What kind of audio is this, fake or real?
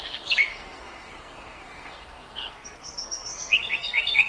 fake